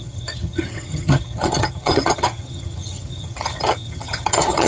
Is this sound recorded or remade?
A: remade